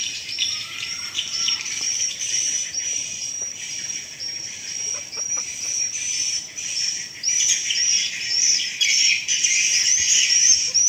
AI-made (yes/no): yes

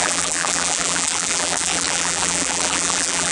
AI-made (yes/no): yes